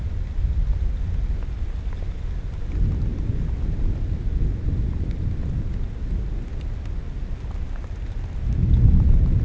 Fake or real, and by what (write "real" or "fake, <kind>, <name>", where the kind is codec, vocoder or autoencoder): real